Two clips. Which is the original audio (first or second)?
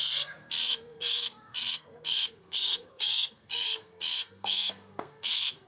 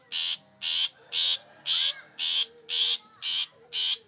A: second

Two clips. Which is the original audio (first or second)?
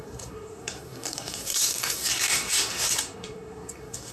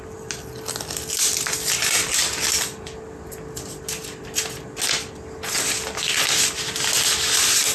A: second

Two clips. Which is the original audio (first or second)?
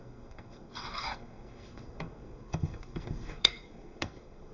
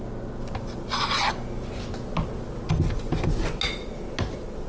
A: second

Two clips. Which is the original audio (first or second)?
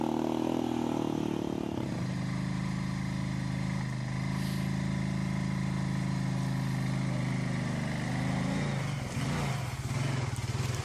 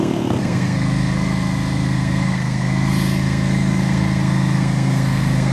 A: first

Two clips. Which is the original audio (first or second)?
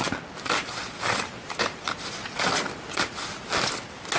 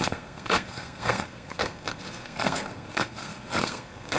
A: first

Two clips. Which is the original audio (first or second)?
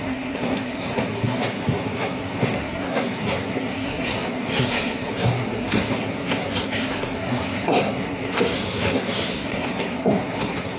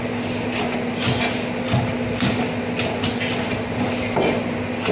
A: second